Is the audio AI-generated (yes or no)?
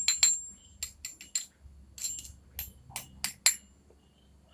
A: no